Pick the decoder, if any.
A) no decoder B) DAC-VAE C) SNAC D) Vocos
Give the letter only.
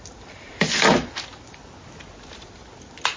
A